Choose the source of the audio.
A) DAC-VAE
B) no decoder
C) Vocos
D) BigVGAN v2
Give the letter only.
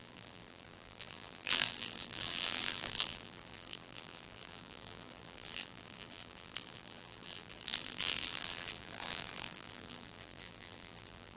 D